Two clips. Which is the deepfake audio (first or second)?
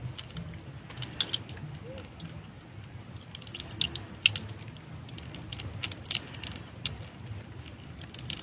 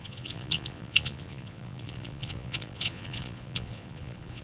second